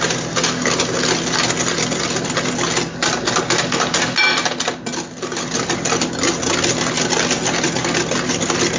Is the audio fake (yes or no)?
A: no